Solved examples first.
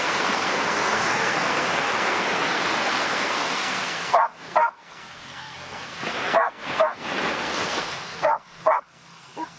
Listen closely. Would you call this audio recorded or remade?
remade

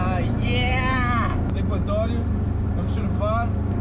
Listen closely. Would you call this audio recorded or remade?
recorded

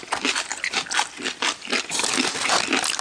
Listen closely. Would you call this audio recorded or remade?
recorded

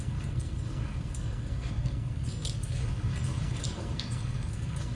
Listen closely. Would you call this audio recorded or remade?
remade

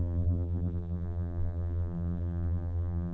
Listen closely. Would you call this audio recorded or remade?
remade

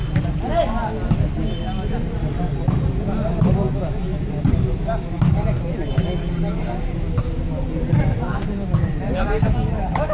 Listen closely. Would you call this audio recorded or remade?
recorded